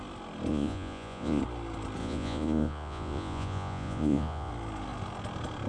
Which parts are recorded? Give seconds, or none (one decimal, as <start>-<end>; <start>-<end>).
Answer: 0.0-0.5; 1.4-2.0; 4.5-5.7